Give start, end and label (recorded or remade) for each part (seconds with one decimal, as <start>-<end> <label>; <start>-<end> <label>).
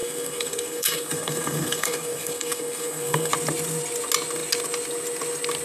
0.0-3.3 remade; 3.3-5.6 recorded